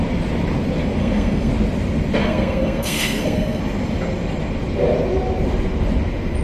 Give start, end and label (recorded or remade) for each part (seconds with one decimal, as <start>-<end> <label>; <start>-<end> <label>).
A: 0.0-1.0 recorded; 1.0-1.5 remade; 1.5-2.2 recorded; 2.2-3.6 remade; 3.6-6.4 recorded